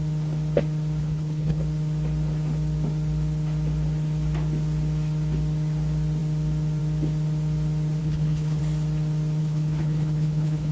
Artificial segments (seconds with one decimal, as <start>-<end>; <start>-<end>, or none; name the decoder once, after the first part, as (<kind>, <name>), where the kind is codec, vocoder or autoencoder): 1.0-1.6 (codec, HILCodec); 8.0-8.6; 9.4-10.7